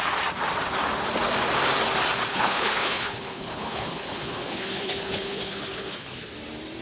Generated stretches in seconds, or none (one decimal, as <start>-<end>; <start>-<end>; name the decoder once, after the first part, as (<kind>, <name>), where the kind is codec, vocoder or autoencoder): 2.3-6.2 (codec, HILCodec)